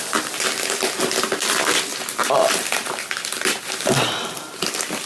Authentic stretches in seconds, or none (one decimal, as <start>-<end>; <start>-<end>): 0.0-1.9